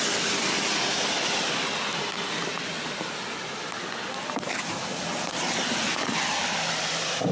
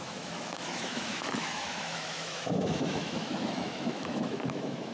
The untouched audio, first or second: first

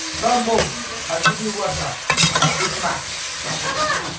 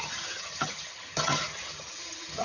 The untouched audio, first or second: first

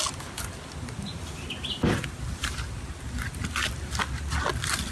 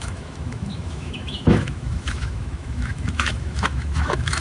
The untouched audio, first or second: first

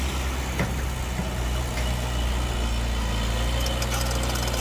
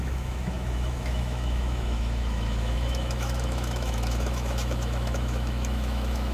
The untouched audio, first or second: first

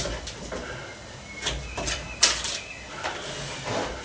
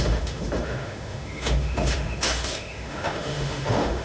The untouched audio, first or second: first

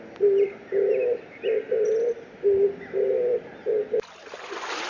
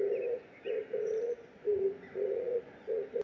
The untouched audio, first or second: first